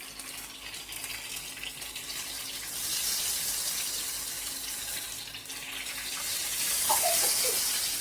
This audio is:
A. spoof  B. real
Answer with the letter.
B